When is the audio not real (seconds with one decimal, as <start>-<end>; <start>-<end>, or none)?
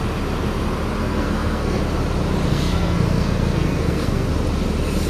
1.0-1.8; 2.5-4.3